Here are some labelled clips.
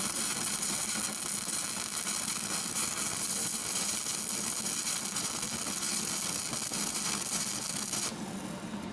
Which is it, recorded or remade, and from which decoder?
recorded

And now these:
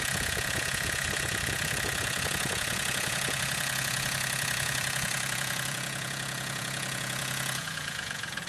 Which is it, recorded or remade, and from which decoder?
remade, vocoder, Vocos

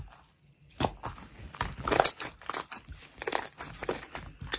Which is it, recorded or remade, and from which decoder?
recorded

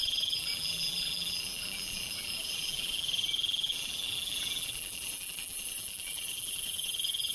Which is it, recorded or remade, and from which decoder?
remade, vocoder, BigVGAN v2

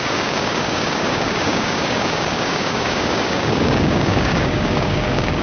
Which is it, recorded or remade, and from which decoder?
remade, codec, DAC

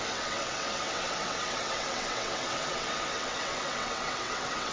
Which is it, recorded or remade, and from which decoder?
remade, vocoder, WaveNeXt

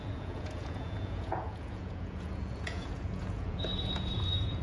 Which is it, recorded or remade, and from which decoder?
remade, vocoder, Vocos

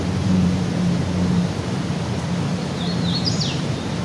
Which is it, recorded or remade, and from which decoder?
remade, vocoder, BigVGAN v2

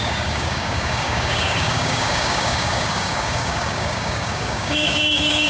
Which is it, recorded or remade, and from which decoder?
remade, codec, DAC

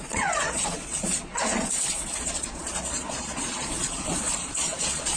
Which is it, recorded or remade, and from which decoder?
remade, vocoder, Vocos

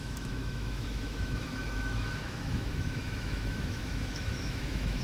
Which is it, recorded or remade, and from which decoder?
remade, autoencoder, DAC-VAE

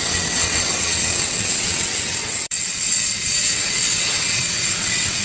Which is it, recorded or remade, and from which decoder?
remade, vocoder, WaveNeXt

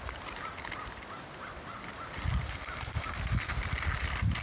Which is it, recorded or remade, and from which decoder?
recorded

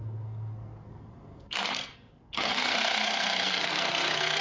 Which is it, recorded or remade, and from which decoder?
remade, codec, SNAC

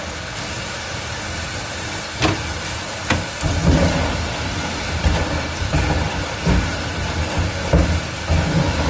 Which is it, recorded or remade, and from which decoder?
recorded